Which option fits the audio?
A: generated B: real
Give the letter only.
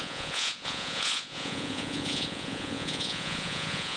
A